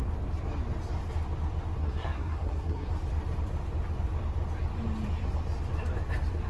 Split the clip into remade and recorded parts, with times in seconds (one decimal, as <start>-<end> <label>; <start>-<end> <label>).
0.0-1.8 recorded; 1.8-2.9 remade; 2.9-6.5 recorded